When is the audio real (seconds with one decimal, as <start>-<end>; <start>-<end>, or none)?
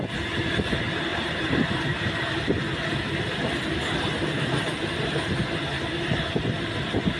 0.0-1.1; 2.1-7.2